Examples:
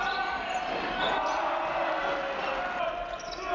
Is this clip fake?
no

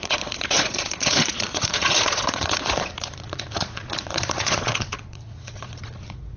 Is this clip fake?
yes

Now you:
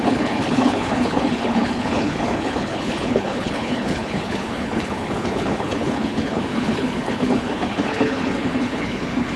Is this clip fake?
yes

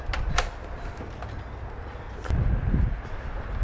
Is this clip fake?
no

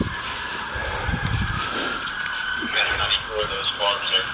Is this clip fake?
no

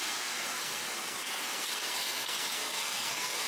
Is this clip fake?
yes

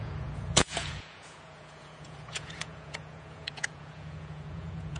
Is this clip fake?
yes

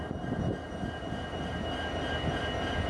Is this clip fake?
no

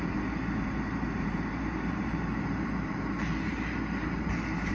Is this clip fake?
yes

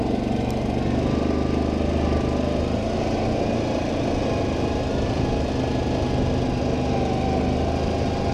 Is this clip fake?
no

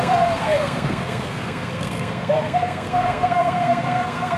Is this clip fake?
yes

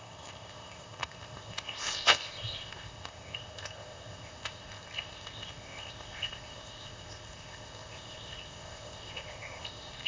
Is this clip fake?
yes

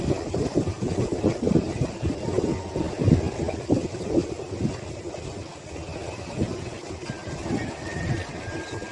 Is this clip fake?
no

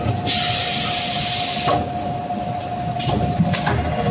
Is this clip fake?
no